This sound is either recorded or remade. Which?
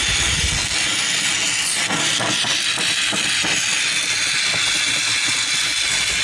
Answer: recorded